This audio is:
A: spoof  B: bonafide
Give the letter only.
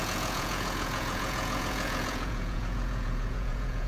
A